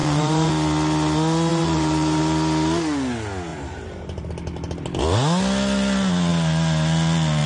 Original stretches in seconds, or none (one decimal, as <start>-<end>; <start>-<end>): 0.5-1.5; 2.2-3.5; 4.3-7.5